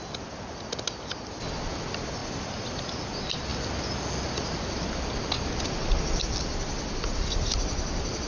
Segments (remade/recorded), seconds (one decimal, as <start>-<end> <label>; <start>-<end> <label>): 0.0-8.3 recorded